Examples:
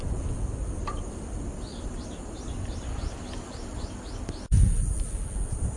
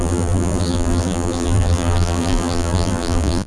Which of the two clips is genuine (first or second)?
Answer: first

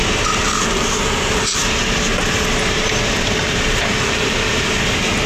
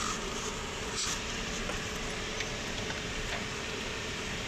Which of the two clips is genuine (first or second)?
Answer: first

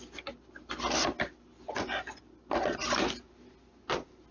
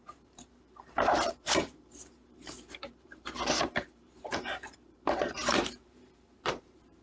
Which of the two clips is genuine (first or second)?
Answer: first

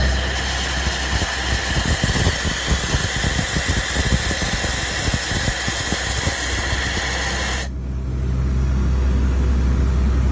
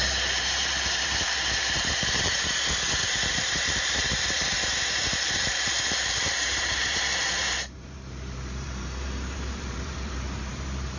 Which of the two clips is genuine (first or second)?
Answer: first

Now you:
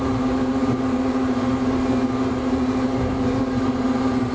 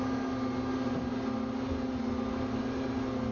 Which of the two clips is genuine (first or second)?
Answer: second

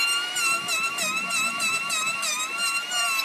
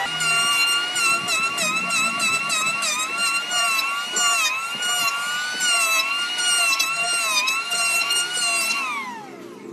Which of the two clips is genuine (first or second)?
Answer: second